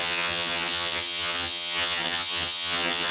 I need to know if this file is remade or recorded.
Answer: remade